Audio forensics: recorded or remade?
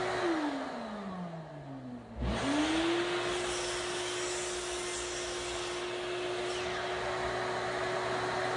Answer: recorded